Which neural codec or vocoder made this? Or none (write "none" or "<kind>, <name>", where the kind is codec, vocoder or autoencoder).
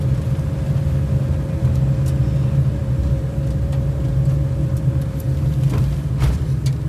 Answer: none